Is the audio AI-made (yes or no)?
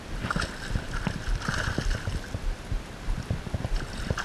no